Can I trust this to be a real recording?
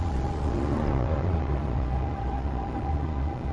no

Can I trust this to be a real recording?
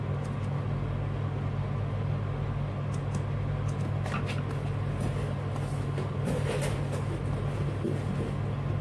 yes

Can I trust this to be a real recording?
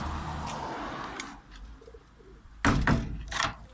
yes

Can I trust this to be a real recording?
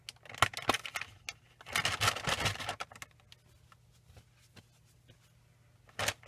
yes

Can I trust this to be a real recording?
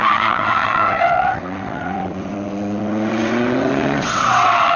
no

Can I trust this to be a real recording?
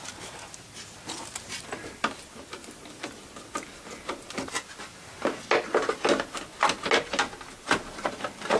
yes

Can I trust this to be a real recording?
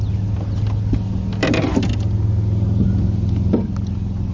yes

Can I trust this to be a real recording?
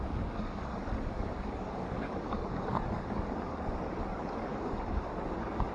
no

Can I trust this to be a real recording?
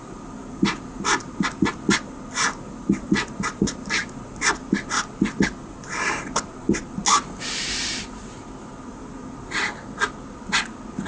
yes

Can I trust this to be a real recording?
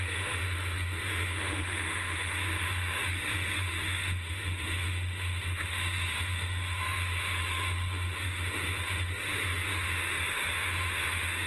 no